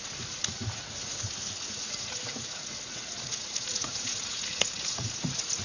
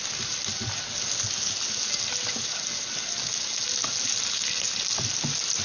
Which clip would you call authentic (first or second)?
second